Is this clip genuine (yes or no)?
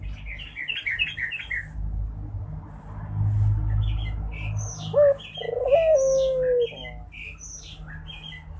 yes